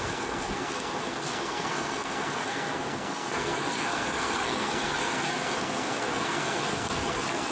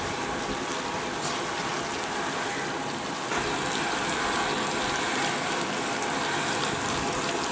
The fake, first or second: first